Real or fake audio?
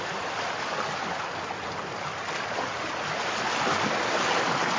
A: real